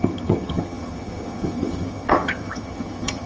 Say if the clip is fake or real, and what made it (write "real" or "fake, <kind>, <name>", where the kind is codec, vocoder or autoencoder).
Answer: fake, vocoder, HiFi-GAN